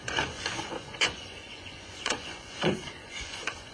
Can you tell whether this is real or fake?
fake